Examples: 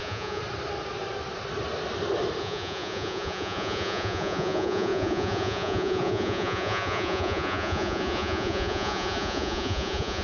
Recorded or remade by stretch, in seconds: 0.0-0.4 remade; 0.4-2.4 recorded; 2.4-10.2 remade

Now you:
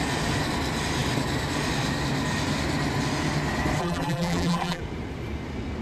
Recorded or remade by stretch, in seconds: 0.0-3.8 recorded; 3.8-4.8 remade; 4.8-5.8 recorded

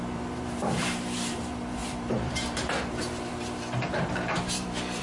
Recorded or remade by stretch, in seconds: 0.0-5.0 remade

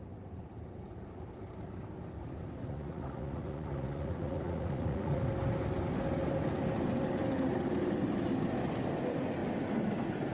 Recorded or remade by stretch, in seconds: 0.0-2.6 recorded; 2.6-5.2 remade; 5.2-10.3 recorded

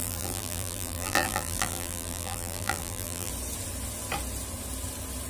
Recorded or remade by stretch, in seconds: 0.0-3.3 remade; 3.3-5.3 recorded

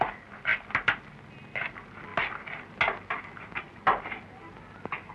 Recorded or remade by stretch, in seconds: 0.0-0.5 recorded; 0.5-1.1 remade; 1.1-5.1 recorded

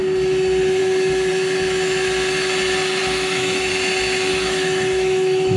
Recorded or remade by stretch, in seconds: 0.0-3.0 recorded; 3.0-3.7 remade; 3.7-4.3 recorded; 4.3-5.6 remade